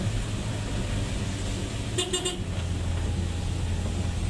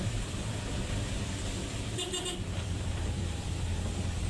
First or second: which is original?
first